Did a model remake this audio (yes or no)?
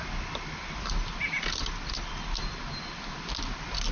no